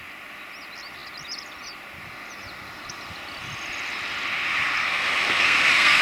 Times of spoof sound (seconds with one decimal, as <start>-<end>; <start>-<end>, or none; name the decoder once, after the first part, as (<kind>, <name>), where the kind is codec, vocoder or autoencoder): 4.8-6.0 (codec, SNAC)